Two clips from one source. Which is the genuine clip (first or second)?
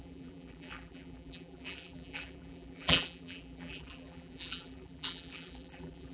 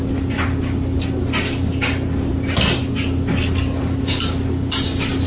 second